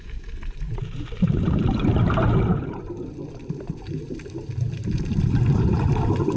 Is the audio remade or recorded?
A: remade